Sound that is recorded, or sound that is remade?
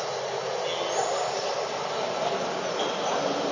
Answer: recorded